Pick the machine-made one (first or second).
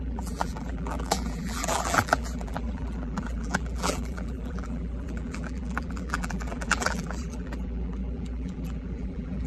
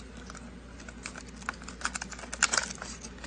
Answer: first